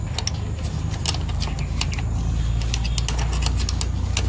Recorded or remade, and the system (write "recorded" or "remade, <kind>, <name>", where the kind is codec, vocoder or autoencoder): recorded